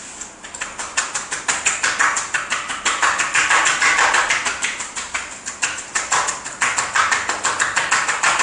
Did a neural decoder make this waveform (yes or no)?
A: no